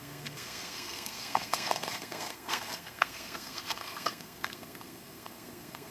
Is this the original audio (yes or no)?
no